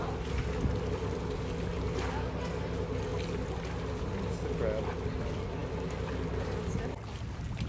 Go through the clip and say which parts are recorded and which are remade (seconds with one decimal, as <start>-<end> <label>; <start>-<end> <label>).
0.0-7.7 recorded